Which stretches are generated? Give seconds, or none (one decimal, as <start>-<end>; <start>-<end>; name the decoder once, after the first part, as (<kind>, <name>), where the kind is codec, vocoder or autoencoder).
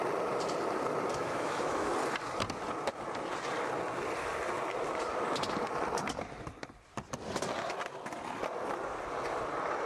1.1-1.9 (autoencoder, DAC-VAE)